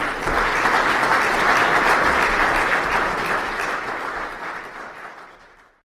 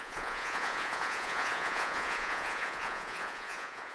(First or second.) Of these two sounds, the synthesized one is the second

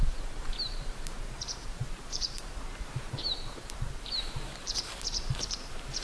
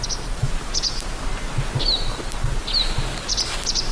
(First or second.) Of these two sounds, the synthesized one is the first